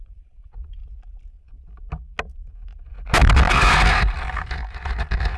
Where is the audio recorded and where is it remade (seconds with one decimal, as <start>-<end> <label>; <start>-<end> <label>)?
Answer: 0.0-0.8 remade; 0.8-4.0 recorded; 4.0-5.4 remade